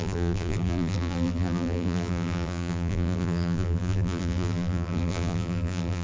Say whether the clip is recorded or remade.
remade